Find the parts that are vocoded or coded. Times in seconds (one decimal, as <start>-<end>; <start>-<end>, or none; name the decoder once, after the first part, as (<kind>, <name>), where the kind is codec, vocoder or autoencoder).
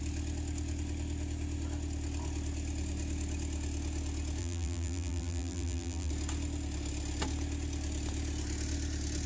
4.4-6.1 (vocoder, BigVGAN v2)